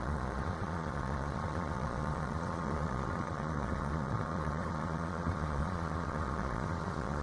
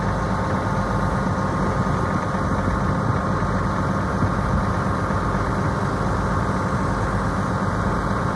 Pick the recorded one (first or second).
second